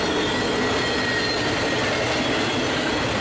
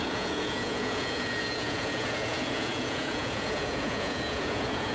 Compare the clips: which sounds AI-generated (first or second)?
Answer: second